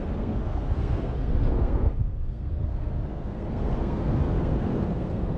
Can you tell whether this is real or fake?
fake